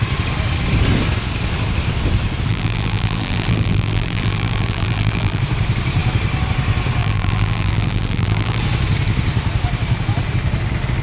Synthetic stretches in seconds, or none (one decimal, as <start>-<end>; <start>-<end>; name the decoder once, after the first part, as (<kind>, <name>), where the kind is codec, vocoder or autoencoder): 2.5-5.4 (vocoder, BigVGAN v2); 7.0-8.6